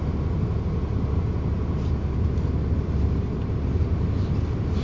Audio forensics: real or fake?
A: real